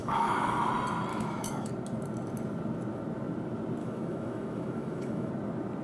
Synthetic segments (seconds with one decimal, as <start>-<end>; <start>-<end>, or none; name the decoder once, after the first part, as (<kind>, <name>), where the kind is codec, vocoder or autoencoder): 0.0-0.7 (autoencoder, DAC-VAE); 1.1-1.7; 3.8-5.3